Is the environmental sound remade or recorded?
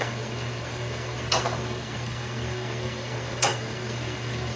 remade